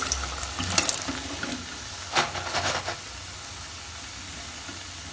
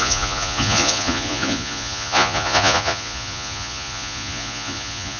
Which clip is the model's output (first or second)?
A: second